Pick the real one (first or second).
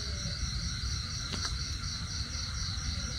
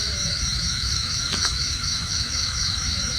first